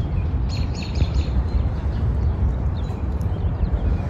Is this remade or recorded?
remade